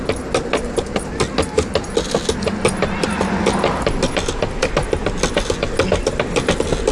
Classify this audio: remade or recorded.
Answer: recorded